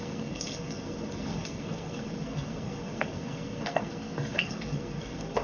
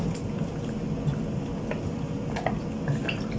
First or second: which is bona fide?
second